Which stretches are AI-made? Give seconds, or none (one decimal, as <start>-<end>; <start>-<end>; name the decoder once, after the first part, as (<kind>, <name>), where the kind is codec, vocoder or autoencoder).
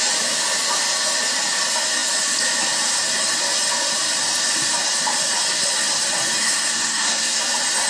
6.4-7.4 (codec, SNAC)